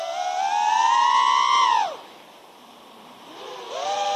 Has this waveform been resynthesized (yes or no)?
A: no